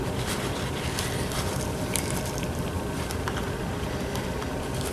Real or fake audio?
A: fake